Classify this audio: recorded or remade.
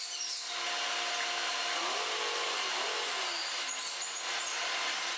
recorded